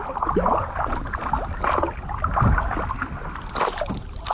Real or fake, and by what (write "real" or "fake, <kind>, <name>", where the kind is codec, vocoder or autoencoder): real